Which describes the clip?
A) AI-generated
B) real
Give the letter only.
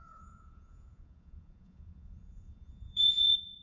A